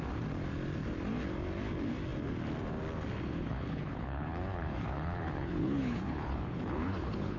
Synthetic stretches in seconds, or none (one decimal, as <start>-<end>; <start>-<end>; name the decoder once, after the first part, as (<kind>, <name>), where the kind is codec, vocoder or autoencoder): 3.3-7.4 (codec, HILCodec)